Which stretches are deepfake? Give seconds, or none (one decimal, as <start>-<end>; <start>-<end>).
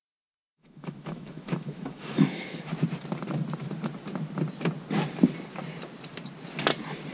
0.0-2.6